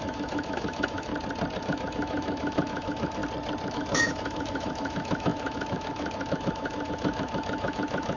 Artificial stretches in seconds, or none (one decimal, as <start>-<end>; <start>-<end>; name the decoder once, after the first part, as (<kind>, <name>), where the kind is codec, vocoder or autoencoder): 0.0-1.1 (autoencoder, DAC-VAE); 1.6-3.2; 3.7-8.2